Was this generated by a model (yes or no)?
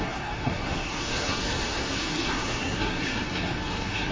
yes